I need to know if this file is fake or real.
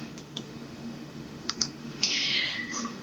fake